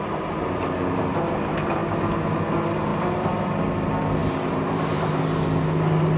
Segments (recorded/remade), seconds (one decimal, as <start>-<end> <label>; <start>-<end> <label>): 0.0-1.8 recorded; 1.8-2.4 remade; 2.4-2.9 recorded; 2.9-3.6 remade; 3.6-4.2 recorded; 4.2-5.2 remade; 5.2-6.2 recorded